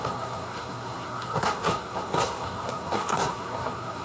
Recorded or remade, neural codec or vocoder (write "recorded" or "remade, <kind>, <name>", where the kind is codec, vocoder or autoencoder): remade, codec, SNAC